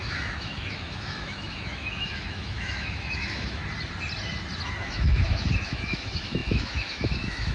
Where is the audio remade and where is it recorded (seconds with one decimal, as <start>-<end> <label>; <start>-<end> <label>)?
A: 0.0-3.6 remade; 3.6-4.8 recorded; 4.8-7.5 remade